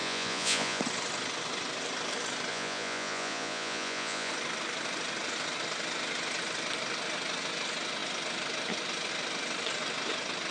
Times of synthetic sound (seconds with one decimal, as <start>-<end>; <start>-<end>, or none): 0.0-0.8; 2.5-4.3